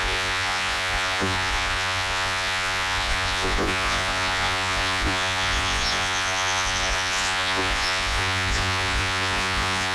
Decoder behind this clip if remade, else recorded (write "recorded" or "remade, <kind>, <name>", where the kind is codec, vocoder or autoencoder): remade, vocoder, Vocos